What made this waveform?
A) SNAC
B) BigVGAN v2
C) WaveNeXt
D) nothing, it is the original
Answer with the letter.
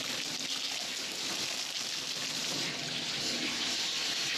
D